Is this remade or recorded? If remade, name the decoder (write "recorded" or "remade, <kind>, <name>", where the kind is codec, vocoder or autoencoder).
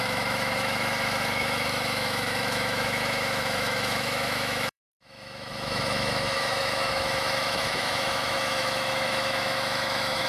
remade, autoencoder, DAC-VAE